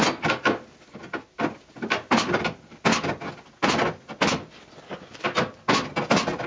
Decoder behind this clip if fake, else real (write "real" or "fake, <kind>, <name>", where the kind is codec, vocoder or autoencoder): real